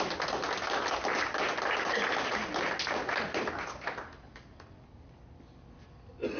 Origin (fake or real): real